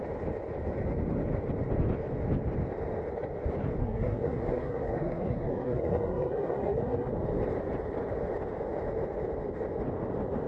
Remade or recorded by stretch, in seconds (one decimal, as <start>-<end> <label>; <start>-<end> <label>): 0.0-3.8 recorded; 3.8-7.1 remade; 7.1-10.5 recorded